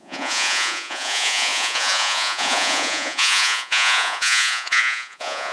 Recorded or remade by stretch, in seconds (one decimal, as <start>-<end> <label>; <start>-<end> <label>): 0.0-5.5 remade

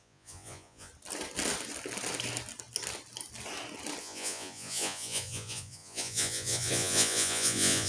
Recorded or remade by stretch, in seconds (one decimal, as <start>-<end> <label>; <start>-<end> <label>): 0.0-0.9 remade; 0.9-4.0 recorded; 4.0-7.9 remade

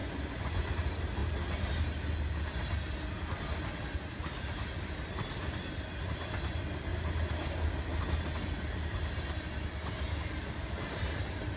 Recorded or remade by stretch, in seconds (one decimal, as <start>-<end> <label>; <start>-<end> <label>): 0.0-0.6 remade; 0.6-11.6 recorded

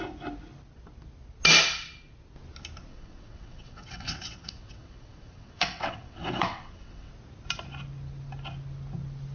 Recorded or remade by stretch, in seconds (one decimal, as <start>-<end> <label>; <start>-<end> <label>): 0.0-2.9 recorded; 2.9-7.1 remade; 7.1-9.3 recorded

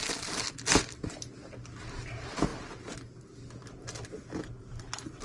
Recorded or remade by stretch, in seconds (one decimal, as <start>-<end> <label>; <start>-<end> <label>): 0.0-5.2 recorded

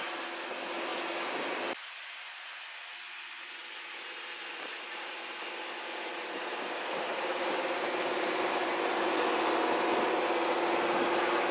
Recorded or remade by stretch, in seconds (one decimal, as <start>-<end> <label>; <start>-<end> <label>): 0.0-11.5 recorded